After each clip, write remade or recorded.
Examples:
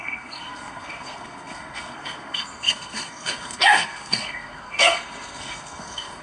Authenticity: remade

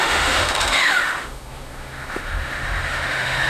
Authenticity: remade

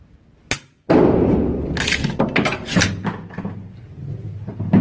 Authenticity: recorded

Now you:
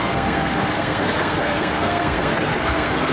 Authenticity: remade